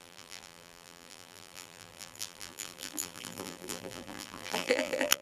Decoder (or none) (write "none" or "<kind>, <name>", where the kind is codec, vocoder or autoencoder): vocoder, BigVGAN v2